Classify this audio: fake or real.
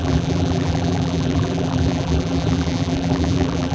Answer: fake